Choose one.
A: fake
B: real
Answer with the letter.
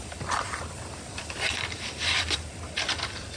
A